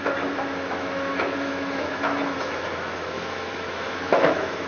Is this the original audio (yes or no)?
no